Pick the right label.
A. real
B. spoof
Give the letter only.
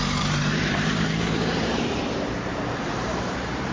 B